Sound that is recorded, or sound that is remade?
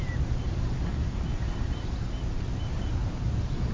recorded